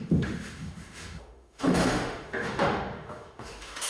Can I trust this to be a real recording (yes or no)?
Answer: no